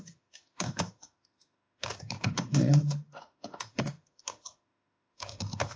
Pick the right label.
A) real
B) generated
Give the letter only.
B